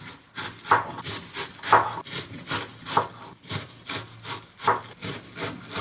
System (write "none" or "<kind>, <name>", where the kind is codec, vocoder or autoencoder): none